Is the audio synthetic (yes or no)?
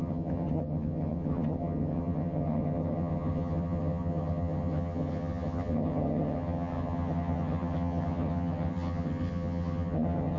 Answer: yes